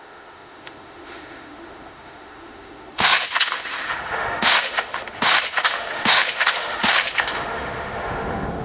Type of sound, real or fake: fake